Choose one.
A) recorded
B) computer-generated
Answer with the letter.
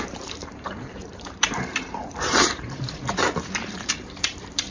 B